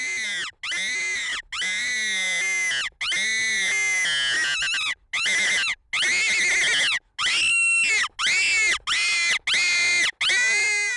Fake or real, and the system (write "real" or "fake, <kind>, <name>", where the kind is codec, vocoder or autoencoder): real